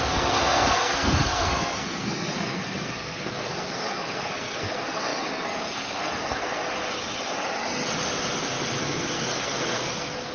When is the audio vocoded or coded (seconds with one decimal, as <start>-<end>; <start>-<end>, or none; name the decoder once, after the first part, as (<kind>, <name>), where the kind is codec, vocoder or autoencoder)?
0.0-6.6 (codec, SNAC); 8.8-10.3